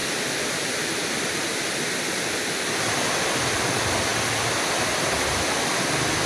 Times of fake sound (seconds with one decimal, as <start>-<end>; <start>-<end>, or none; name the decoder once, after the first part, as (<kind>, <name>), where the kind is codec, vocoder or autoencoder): none